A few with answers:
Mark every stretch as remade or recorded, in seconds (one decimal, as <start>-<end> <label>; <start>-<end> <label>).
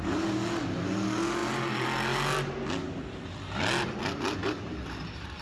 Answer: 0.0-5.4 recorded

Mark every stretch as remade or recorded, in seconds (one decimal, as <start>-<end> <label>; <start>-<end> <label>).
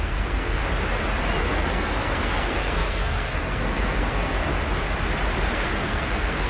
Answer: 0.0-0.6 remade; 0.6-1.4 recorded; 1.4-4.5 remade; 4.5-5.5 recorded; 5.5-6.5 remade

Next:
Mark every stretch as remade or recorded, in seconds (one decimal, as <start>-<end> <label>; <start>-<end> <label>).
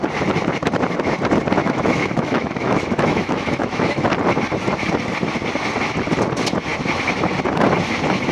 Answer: 0.0-1.6 recorded; 1.6-4.1 remade; 4.1-8.3 recorded